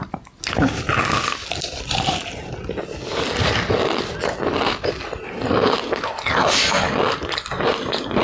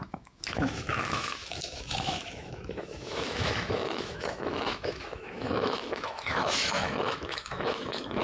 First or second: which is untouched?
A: first